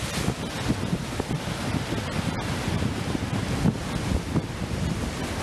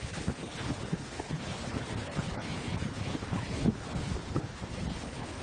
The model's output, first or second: second